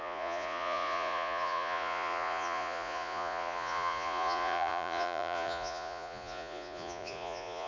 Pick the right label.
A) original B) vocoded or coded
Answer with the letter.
B